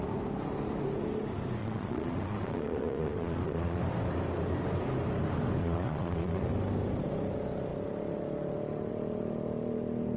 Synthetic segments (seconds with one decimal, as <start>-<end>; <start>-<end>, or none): 1.6-3.8; 5.6-6.5